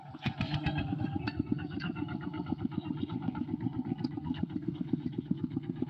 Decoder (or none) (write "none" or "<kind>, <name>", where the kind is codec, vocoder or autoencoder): codec, SNAC